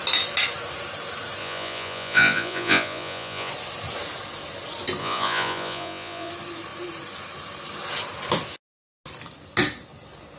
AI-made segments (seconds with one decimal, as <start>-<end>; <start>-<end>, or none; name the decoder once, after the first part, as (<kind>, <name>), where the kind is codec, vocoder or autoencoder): 1.4-3.5 (vocoder, Vocos); 5.0-6.3